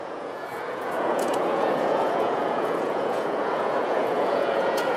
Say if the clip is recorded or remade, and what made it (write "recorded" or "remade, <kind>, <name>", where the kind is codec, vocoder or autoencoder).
remade, vocoder, Vocos